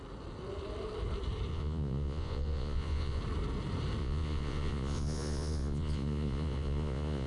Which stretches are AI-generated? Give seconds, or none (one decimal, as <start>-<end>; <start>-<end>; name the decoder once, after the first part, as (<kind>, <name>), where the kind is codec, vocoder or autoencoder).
1.5-3.2 (vocoder, Vocos); 4.0-7.3